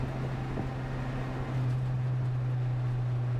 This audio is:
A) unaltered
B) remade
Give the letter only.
A